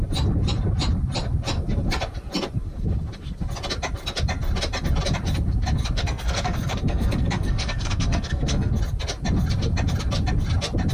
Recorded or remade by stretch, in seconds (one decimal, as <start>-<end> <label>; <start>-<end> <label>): 0.0-6.0 recorded; 6.0-8.7 remade; 8.7-10.9 recorded